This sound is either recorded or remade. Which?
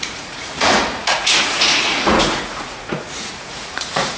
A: remade